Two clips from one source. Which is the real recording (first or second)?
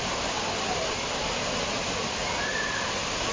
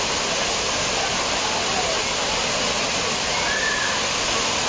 second